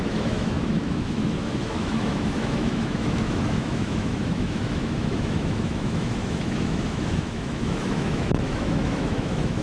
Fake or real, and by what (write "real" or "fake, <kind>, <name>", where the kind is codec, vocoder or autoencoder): fake, autoencoder, DAC-VAE